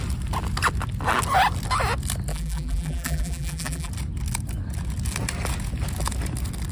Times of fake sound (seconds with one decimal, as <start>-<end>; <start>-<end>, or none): 2.3-3.9